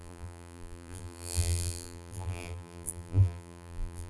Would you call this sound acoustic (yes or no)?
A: no